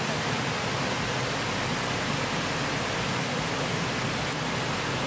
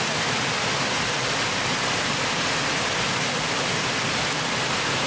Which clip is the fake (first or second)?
second